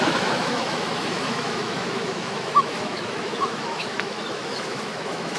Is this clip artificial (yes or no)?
yes